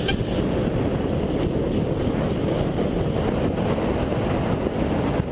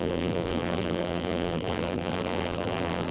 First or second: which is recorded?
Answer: first